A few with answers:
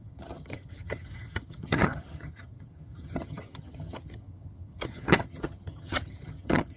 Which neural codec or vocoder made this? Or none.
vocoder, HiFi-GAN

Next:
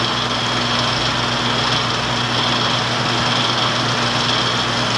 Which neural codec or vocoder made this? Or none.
none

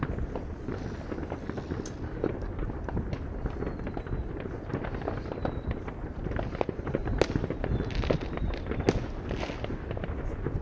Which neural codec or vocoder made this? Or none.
none